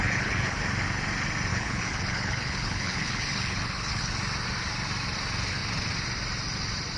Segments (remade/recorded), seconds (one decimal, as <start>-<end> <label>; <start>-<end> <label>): 0.0-0.6 remade; 0.6-1.5 recorded; 1.5-4.1 remade; 4.1-7.0 recorded